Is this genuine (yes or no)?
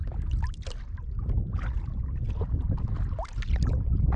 yes